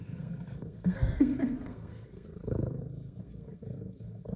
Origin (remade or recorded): remade